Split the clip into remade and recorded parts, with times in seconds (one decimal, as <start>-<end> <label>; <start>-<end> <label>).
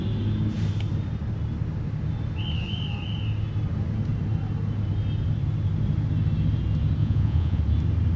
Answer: 0.0-7.0 recorded; 7.0-7.6 remade; 7.6-8.2 recorded